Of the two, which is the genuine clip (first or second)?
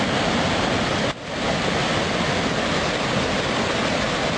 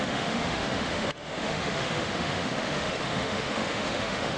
first